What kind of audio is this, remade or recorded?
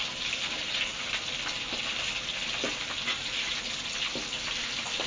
recorded